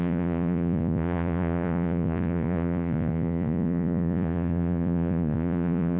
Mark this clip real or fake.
fake